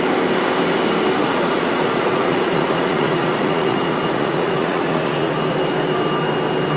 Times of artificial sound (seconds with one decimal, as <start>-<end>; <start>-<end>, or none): 1.2-5.3